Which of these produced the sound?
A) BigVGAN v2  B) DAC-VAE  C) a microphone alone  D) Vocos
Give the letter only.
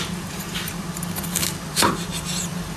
C